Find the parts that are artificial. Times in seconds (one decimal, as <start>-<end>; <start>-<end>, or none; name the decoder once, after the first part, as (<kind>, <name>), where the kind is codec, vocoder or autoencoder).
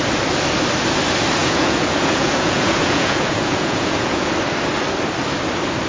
1.4-4.3 (vocoder, Vocos)